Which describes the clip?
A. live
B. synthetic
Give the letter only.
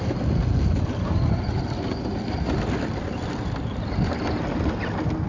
A